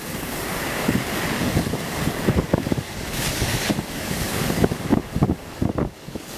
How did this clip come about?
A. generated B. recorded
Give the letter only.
A